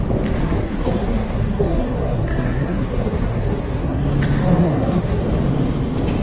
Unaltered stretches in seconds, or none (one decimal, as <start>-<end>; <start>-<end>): 0.0-0.4; 4.1-4.6; 5.2-6.2